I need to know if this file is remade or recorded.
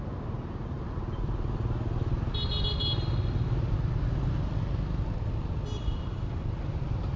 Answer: recorded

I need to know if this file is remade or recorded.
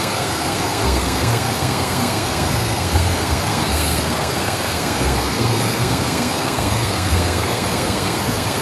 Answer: remade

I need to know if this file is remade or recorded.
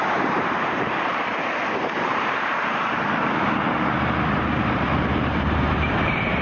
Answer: remade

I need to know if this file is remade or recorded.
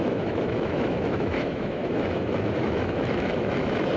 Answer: remade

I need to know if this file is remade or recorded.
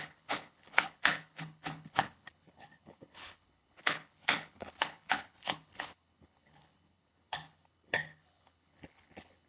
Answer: remade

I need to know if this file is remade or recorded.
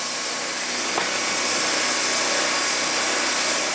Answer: recorded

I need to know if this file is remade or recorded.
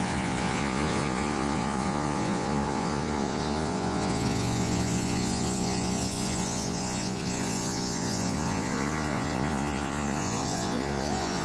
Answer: remade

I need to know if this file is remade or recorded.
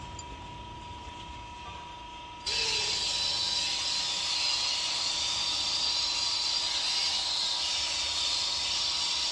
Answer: recorded